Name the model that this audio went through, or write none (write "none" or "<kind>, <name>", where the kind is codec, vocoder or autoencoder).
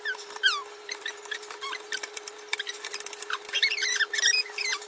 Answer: vocoder, BigVGAN v2